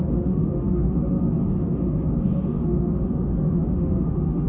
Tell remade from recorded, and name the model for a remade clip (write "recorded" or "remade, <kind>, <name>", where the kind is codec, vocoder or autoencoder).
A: remade, autoencoder, DAC-VAE